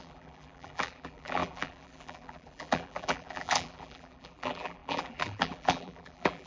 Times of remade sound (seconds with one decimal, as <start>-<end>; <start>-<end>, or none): 0.0-6.5